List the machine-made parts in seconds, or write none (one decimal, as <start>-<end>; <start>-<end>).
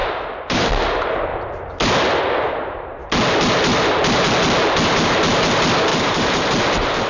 0.0-0.7; 5.9-6.4